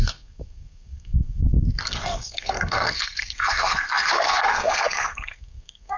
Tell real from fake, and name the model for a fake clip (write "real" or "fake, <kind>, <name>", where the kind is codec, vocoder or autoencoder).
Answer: fake, codec, SNAC